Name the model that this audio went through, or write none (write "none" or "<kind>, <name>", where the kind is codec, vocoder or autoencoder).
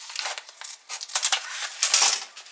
none